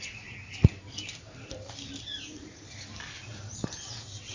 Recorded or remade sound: recorded